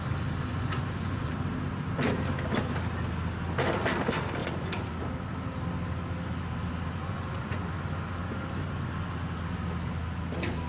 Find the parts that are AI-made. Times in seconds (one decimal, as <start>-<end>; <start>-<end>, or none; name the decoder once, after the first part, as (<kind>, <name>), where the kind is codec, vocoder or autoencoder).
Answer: 0.5-1.3 (vocoder, Vocos); 4.4-5.0; 7.0-7.7